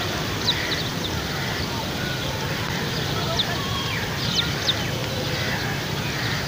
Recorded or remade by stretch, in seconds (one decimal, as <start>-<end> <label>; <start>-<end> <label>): 0.0-0.9 recorded; 0.9-4.1 remade; 4.1-6.5 recorded